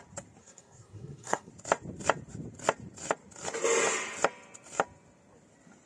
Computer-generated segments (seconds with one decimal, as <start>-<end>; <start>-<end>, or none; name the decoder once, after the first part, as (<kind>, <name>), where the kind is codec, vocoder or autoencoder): 0.4-1.5 (codec, SNAC)